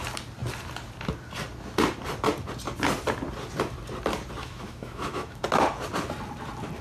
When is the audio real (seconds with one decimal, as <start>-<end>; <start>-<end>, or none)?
0.0-4.4; 5.4-6.8